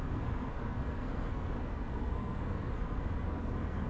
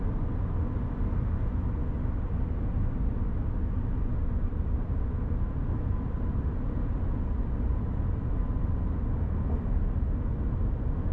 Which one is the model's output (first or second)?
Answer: first